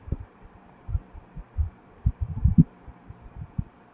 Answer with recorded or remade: remade